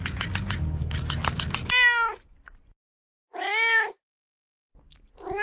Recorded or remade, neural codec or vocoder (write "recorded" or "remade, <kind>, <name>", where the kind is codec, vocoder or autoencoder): recorded